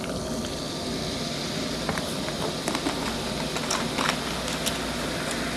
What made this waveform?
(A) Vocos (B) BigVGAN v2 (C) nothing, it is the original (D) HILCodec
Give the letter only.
C